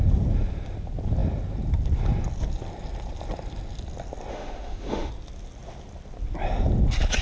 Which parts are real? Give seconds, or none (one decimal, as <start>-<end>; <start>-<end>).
0.0-4.3; 5.1-7.2